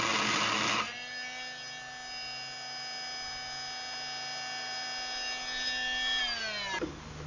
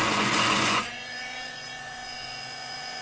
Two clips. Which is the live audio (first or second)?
first